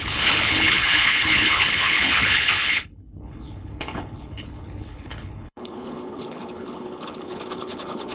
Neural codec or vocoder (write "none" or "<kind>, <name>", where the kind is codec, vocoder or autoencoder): codec, HILCodec